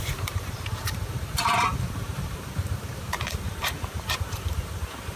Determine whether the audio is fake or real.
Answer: fake